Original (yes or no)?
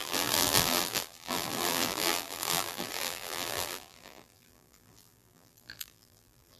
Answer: no